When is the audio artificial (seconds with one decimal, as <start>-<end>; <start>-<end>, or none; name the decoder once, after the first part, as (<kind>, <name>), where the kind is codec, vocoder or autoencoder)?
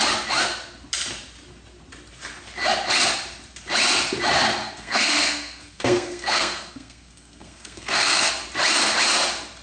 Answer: 4.6-8.3 (codec, SNAC)